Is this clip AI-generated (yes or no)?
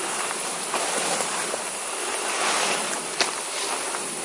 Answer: no